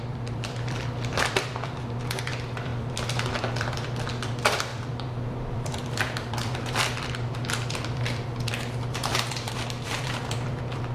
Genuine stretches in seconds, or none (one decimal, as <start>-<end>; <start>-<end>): none